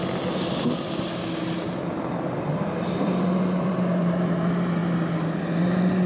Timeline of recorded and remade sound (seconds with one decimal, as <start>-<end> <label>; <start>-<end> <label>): 0.0-3.0 recorded; 3.0-4.8 remade; 4.8-5.4 recorded; 5.4-6.1 remade